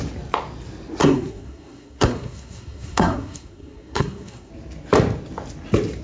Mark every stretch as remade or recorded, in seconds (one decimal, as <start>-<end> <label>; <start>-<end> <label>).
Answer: 0.0-1.0 recorded; 1.0-4.5 remade; 4.5-6.0 recorded